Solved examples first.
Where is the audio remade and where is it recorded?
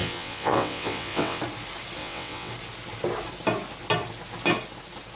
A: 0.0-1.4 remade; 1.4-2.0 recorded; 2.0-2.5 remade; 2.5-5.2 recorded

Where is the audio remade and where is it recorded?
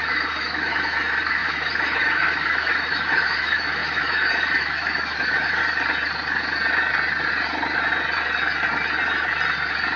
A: 0.0-5.6 remade; 5.6-10.0 recorded